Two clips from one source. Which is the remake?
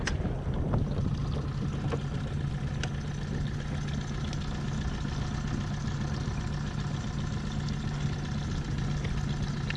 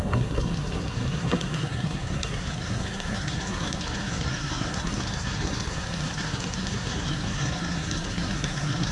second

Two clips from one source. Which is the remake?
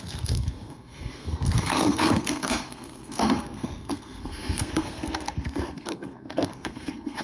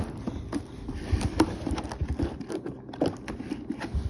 first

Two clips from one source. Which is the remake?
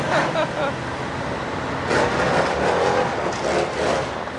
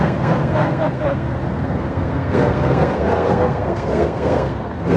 second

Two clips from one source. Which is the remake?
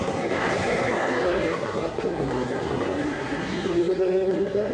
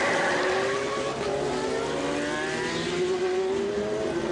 first